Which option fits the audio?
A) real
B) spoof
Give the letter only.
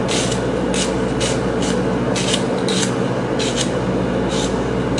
A